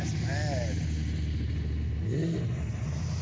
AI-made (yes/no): no